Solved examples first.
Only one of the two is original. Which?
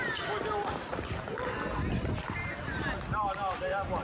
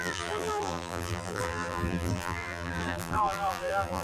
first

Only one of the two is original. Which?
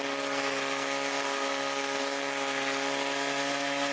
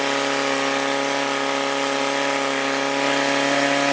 second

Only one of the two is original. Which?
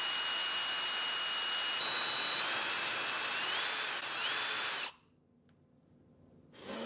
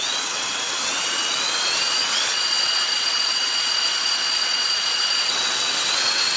first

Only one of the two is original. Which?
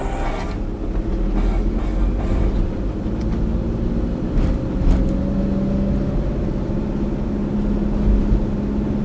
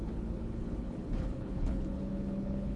first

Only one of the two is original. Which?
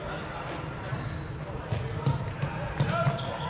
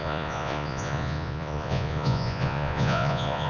first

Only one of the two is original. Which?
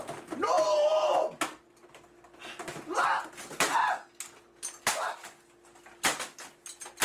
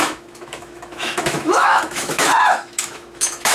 first